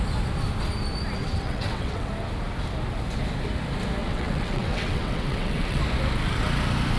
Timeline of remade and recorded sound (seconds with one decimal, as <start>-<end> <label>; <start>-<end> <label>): 0.0-1.2 recorded; 1.2-2.1 remade; 2.1-4.0 recorded; 4.0-5.8 remade; 5.8-7.0 recorded